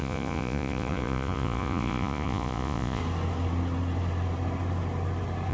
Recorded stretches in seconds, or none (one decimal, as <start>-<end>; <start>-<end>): 3.0-5.5